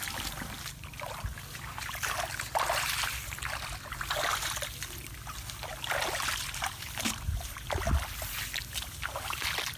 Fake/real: real